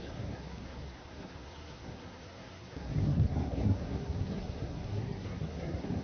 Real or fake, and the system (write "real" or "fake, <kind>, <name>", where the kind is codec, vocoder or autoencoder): fake, codec, SNAC